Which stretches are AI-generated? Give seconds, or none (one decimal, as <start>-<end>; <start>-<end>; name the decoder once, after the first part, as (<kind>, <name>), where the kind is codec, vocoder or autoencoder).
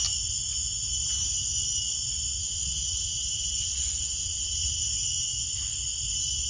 2.4-4.8 (vocoder, WaveNeXt)